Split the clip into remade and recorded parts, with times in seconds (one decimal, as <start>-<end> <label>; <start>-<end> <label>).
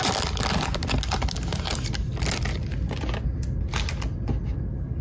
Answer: 0.0-5.0 recorded